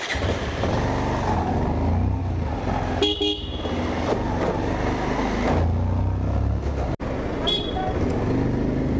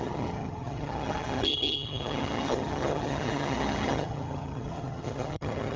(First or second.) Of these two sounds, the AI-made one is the second